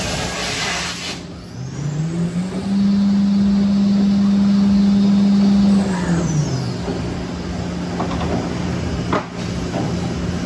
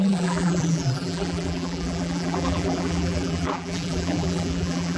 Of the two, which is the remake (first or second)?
second